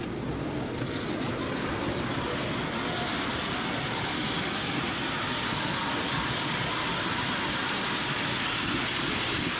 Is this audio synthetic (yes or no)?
no